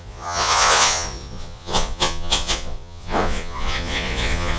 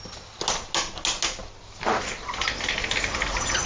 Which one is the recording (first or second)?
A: second